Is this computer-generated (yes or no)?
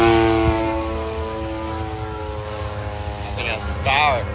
no